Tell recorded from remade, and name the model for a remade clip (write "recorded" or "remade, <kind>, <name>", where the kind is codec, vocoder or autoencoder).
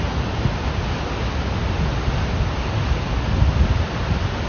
recorded